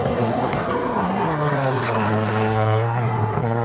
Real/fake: fake